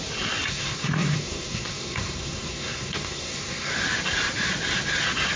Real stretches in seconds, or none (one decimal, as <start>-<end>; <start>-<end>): 0.0-0.5; 3.7-5.4